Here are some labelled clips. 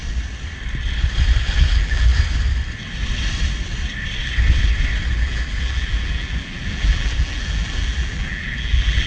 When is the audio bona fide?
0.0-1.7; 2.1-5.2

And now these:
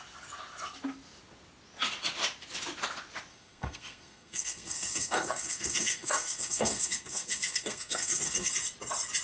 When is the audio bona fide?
0.0-3.3; 8.5-9.2

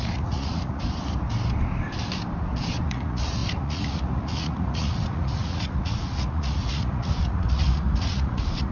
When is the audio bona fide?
0.8-2.8

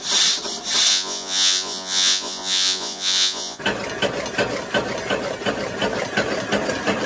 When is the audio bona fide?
0.0-0.9; 3.6-7.1